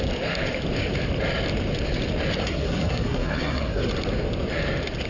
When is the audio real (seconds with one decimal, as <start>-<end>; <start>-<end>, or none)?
0.0-2.4; 3.9-5.1